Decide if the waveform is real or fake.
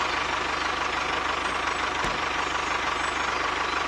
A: real